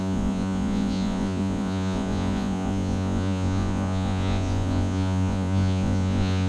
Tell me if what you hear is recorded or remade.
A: remade